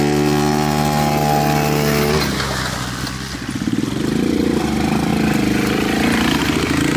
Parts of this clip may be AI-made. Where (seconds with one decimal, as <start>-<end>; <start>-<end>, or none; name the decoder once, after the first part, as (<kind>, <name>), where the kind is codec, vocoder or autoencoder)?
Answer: none

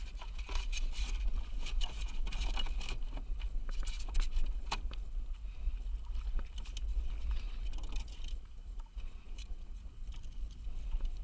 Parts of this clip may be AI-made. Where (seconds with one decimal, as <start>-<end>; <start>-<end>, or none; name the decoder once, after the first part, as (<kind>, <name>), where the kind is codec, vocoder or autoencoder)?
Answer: 8.6-9.9 (vocoder, Vocos)